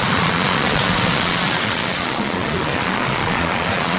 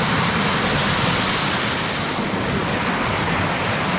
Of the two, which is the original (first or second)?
second